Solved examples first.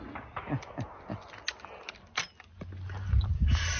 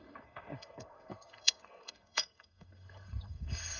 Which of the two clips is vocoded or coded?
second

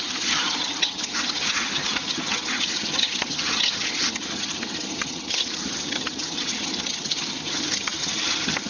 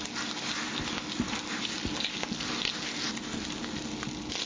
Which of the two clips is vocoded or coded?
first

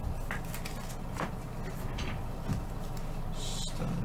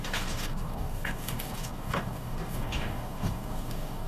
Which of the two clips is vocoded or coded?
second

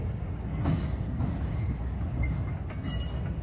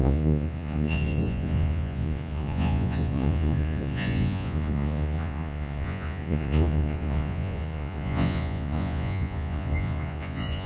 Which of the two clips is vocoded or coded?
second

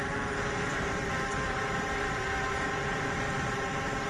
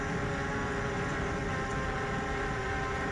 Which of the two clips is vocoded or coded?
first